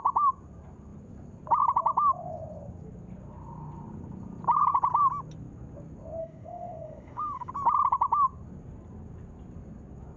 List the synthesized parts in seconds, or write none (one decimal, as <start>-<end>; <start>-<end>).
6.2-7.5